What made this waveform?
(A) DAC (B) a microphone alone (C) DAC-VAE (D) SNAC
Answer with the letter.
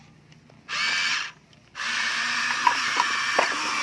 B